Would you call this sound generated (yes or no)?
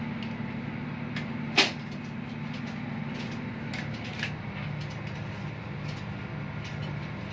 no